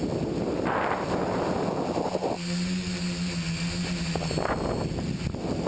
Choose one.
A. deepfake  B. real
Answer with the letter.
B